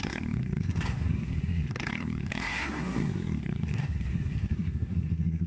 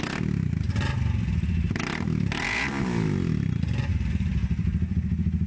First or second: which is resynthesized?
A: first